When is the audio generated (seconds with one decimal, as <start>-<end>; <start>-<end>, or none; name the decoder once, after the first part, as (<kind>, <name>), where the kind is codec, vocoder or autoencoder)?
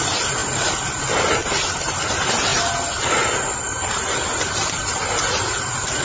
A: none